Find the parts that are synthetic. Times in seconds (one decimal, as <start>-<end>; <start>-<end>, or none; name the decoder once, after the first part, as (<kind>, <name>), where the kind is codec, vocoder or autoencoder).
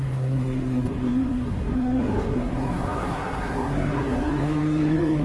0.0-5.2 (codec, SNAC)